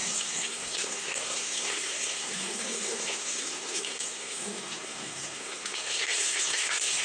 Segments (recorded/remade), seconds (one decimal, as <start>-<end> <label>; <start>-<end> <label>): 0.0-7.0 remade